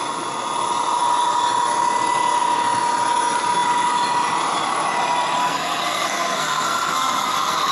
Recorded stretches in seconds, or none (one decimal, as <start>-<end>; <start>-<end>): 0.0-5.4